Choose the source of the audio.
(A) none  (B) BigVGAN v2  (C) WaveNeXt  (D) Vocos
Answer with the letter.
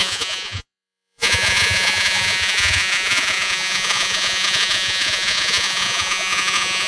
D